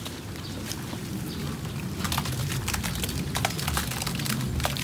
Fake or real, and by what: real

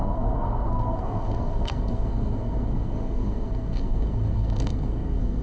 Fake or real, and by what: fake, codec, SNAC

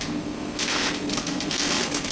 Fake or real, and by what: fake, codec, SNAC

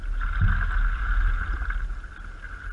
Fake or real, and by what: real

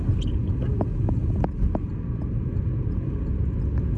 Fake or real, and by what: real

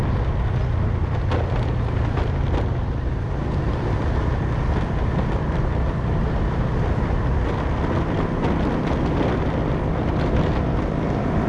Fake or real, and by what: real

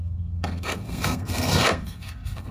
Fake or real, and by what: fake, codec, SNAC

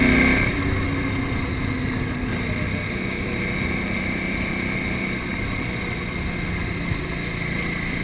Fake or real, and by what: real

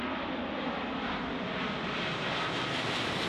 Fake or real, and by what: real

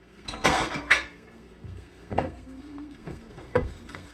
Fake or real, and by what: fake, codec, SNAC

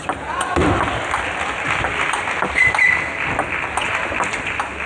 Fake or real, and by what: real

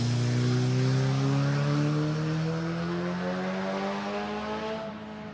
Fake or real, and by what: real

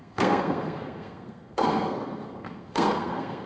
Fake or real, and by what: fake, codec, SNAC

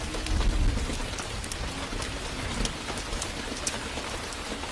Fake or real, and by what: real